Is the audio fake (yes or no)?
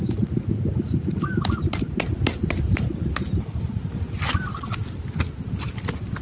no